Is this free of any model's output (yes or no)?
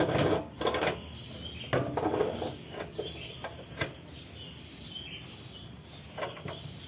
yes